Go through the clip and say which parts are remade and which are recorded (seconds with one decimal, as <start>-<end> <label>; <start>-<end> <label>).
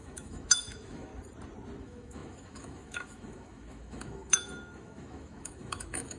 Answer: 0.0-1.1 remade; 1.1-1.8 recorded; 1.8-6.2 remade